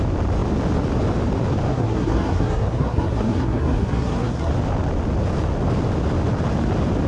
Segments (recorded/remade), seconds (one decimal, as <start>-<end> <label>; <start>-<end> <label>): 0.0-1.7 recorded; 1.7-4.5 remade; 4.5-7.1 recorded